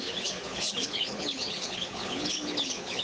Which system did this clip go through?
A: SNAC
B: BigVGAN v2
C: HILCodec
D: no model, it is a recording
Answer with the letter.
C